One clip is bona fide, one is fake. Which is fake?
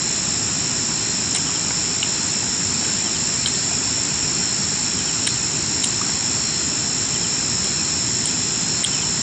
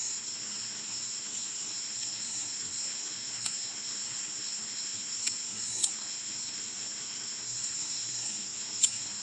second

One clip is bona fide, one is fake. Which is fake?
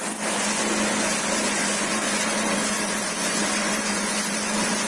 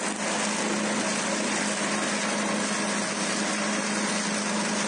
first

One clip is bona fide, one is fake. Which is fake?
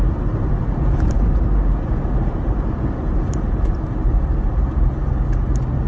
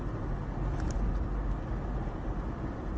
first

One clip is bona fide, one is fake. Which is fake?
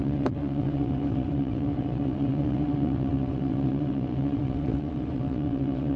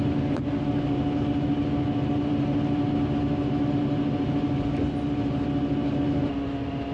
first